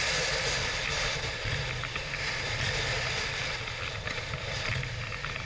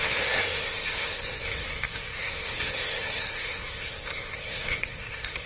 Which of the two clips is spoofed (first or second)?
second